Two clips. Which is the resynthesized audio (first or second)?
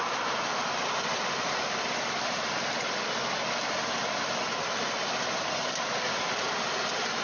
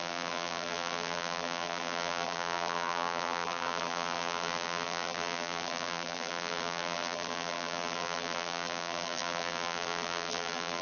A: second